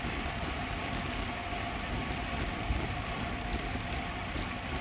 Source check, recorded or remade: recorded